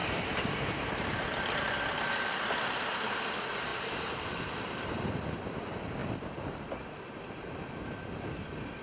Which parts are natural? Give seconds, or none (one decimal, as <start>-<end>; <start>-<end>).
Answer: 1.6-6.0; 7.4-8.8